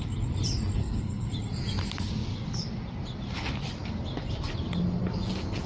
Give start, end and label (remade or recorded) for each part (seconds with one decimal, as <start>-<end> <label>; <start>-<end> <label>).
0.0-0.8 recorded; 0.8-1.3 remade; 1.3-5.7 recorded